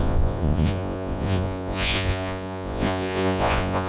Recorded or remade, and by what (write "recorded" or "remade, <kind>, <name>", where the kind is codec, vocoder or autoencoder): remade, vocoder, Vocos